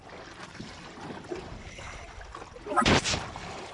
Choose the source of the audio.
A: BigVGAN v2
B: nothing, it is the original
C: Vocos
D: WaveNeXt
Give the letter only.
A